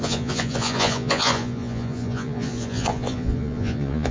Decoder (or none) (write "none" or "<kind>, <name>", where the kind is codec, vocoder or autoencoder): vocoder, Vocos